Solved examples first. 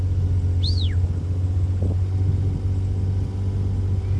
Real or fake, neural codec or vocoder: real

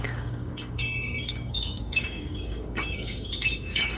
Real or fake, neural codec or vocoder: fake, codec, DAC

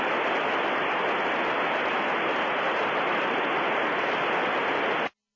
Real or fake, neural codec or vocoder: real